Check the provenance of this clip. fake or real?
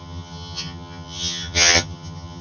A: fake